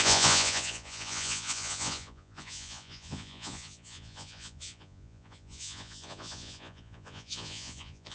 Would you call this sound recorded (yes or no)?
no